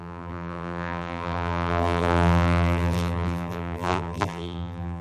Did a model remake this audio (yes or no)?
yes